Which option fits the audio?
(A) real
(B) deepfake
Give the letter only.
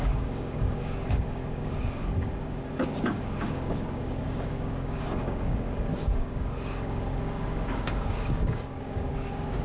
B